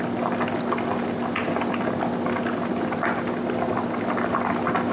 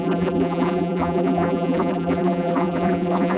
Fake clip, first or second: second